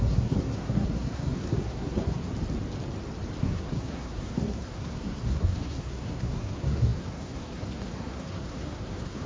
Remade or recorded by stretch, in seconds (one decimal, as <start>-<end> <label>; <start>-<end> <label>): 0.0-2.3 remade; 2.3-3.4 recorded; 3.4-9.3 remade